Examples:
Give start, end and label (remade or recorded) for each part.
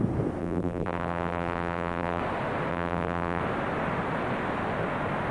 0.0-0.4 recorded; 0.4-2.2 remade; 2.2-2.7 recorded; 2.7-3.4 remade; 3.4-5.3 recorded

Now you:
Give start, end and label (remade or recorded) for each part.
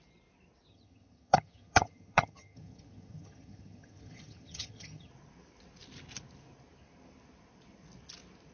0.0-0.7 recorded; 0.7-5.1 remade; 5.1-8.5 recorded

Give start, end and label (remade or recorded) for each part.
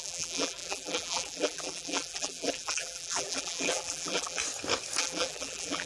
0.0-4.4 remade; 4.4-5.0 recorded; 5.0-5.9 remade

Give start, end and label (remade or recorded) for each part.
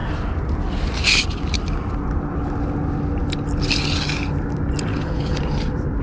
0.0-4.9 recorded; 4.9-5.4 remade; 5.4-6.0 recorded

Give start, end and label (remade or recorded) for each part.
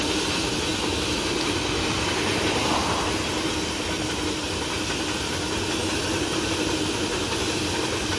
0.0-8.2 recorded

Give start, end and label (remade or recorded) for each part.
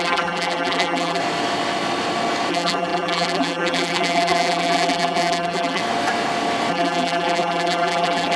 0.0-1.2 remade; 1.2-2.5 recorded; 2.5-5.8 remade; 5.8-6.7 recorded; 6.7-8.4 remade